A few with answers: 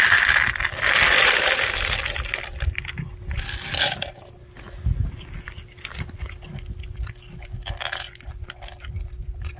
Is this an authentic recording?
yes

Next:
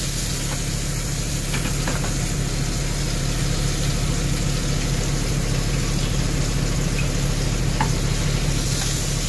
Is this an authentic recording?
yes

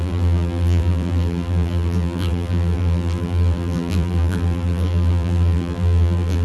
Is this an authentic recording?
no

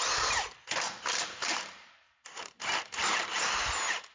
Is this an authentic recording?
no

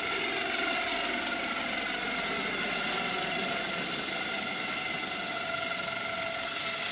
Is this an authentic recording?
yes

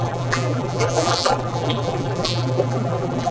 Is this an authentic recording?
no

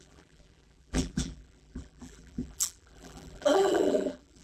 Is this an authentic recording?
no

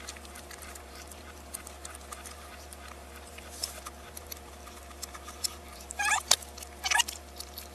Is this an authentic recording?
no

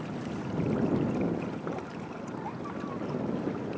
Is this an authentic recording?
yes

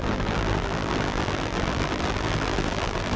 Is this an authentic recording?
no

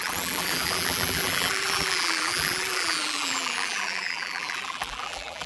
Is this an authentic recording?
no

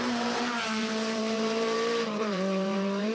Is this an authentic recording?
no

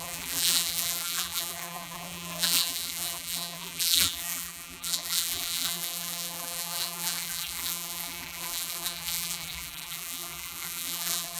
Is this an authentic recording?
no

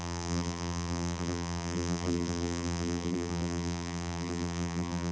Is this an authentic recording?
no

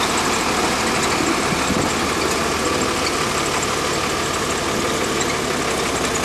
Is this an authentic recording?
yes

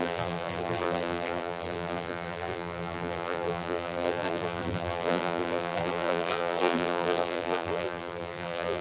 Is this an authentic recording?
no